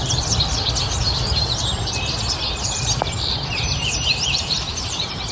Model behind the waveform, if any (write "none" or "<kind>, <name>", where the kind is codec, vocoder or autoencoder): vocoder, BigVGAN v2